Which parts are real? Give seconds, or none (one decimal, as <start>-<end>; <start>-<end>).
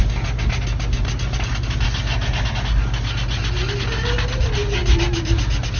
0.0-5.8